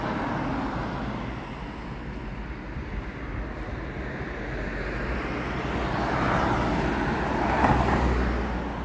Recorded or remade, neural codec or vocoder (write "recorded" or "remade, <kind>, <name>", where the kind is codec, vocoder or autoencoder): recorded